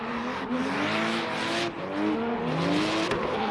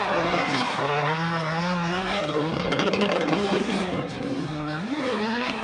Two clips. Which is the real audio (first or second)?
first